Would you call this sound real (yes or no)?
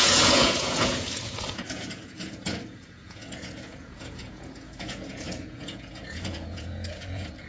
no